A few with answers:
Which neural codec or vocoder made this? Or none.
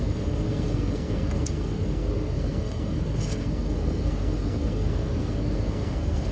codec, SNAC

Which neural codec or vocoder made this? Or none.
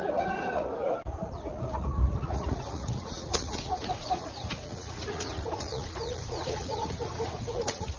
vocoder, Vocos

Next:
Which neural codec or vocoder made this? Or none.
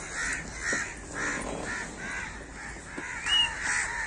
none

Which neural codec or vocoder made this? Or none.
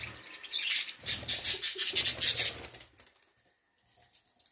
none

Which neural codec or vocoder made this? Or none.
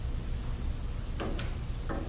none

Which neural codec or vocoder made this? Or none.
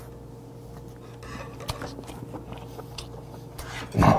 none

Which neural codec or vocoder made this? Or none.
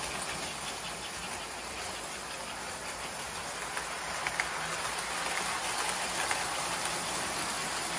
none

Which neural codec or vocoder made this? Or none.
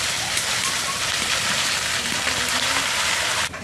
vocoder, BigVGAN v2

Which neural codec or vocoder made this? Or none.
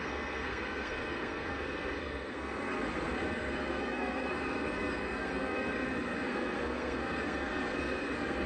codec, SNAC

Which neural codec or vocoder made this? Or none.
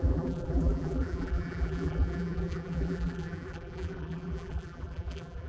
vocoder, BigVGAN v2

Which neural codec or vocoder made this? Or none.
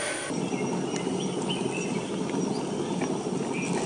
none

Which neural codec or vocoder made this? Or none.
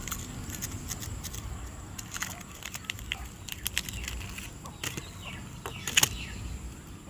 none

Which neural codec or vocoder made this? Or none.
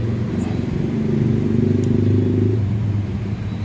none